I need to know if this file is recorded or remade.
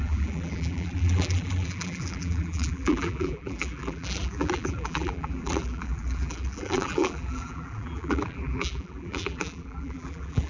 remade